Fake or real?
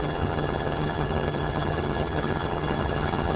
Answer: fake